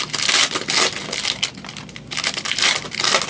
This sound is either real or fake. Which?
real